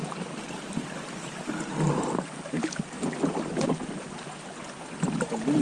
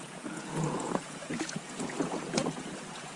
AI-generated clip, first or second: second